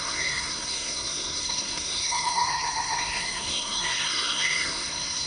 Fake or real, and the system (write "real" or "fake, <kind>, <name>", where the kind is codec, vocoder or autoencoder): fake, codec, SNAC